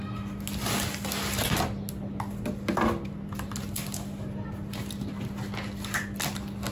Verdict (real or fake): real